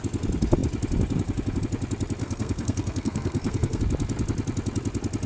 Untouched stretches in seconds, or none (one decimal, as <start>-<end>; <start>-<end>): 0.0-2.2; 3.8-5.3